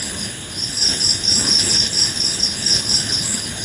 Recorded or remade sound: remade